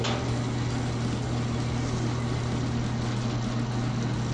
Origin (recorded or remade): recorded